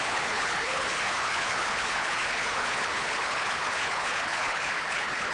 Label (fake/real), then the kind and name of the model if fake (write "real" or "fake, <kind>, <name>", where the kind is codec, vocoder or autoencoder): fake, codec, HILCodec